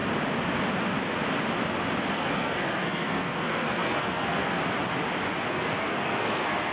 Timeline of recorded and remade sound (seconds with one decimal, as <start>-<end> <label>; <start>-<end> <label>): 0.0-2.1 recorded; 2.1-4.6 remade; 4.6-5.5 recorded; 5.5-6.7 remade